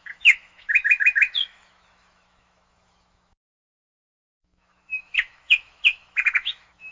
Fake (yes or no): yes